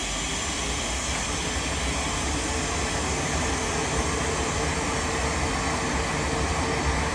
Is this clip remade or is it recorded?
recorded